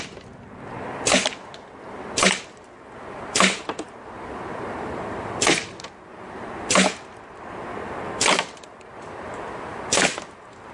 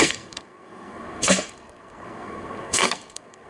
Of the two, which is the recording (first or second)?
first